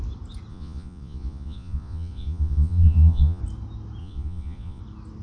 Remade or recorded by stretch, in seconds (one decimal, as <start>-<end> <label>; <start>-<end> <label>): 0.0-0.5 recorded; 0.5-3.4 remade; 3.4-4.0 recorded; 4.0-4.8 remade; 4.8-5.2 recorded